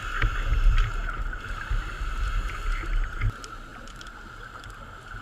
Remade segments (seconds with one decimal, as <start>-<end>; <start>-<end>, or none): none